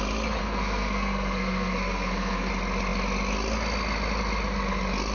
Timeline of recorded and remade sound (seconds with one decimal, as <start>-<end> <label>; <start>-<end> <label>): 0.0-0.4 recorded; 0.4-2.5 remade; 2.5-5.1 recorded